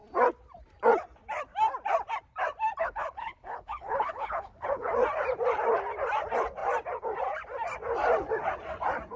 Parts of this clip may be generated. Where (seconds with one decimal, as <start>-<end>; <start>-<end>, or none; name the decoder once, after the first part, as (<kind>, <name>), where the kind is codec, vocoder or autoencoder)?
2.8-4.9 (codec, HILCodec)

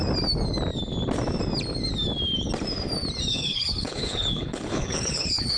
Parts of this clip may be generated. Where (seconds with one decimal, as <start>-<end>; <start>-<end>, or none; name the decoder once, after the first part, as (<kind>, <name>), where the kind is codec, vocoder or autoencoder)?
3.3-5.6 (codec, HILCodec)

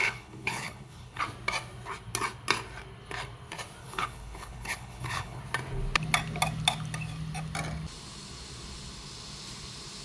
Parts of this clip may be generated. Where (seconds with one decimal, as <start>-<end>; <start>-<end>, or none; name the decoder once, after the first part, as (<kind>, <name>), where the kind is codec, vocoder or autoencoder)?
0.0-1.2 (codec, HILCodec); 3.8-5.4

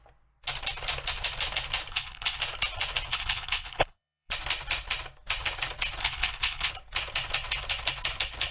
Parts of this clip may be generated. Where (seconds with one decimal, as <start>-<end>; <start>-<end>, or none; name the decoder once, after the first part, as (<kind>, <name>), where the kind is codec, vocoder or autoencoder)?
1.9-2.4 (codec, HILCodec); 3.1-4.3; 6.0-6.7

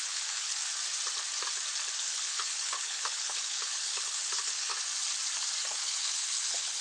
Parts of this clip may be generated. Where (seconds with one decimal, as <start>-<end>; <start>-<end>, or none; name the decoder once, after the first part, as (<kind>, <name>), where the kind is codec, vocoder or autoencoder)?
0.0-0.6 (codec, HILCodec); 2.0-4.7; 5.6-6.8

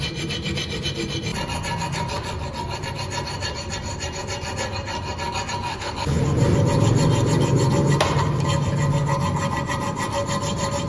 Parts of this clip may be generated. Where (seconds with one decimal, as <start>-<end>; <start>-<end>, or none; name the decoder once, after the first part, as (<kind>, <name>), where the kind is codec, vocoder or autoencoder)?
5.7-6.2 (codec, HILCodec)